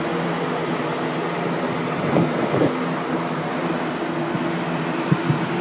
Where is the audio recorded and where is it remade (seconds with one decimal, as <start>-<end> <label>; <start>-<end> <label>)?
0.0-5.6 recorded